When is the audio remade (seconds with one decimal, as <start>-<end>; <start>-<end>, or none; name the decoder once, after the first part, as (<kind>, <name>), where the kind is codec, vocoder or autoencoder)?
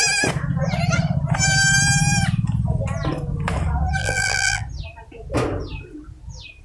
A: 4.0-4.6 (vocoder, BigVGAN v2)